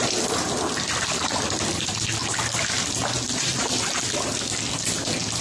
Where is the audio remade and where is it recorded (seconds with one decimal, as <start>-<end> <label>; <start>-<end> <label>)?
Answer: 0.0-5.4 recorded